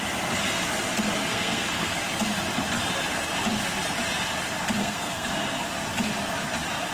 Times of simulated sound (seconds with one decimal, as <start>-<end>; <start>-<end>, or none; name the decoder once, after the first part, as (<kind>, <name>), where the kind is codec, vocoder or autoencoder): 1.3-2.0 (codec, SNAC); 4.8-5.3

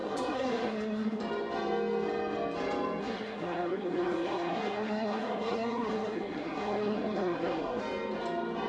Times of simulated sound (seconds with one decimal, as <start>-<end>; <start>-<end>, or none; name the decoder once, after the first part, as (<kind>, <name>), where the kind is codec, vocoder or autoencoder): 0.0-1.2 (codec, SNAC); 3.0-7.8

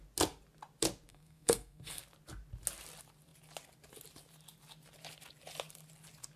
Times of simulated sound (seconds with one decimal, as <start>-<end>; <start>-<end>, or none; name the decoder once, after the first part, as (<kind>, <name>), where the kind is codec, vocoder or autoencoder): 1.1-2.0 (codec, SNAC)

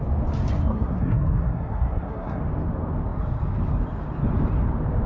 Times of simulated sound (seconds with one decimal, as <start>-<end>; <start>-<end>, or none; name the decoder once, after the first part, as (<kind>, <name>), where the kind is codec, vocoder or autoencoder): 0.7-2.4 (codec, SNAC)